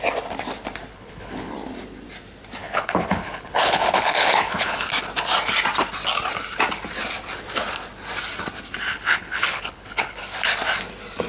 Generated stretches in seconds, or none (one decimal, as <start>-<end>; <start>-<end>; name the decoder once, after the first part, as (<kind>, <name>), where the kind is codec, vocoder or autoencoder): 0.9-1.5 (codec, HILCodec); 2.6-4.9; 8.9-10.2